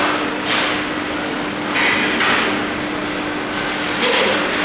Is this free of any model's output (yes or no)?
yes